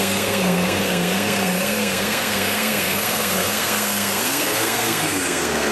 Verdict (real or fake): fake